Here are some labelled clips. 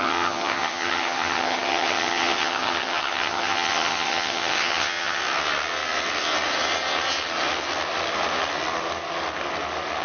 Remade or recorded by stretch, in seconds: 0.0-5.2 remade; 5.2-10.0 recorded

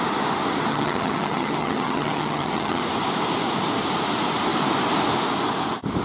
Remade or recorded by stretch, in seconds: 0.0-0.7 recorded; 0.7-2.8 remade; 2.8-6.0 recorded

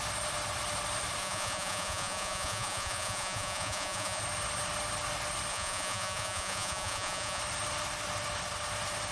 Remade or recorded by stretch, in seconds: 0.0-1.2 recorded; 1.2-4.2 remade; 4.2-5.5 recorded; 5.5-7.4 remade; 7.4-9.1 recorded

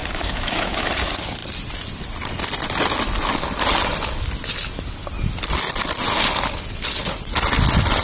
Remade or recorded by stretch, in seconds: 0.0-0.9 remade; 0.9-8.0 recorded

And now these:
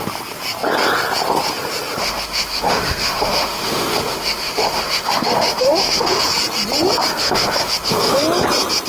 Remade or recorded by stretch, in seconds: 0.0-2.0 recorded; 2.0-6.2 remade; 6.2-7.1 recorded; 7.1-8.2 remade; 8.2-8.9 recorded